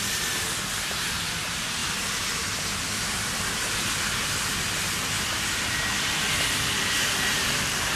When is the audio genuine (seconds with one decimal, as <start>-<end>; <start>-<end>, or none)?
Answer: 1.8-5.7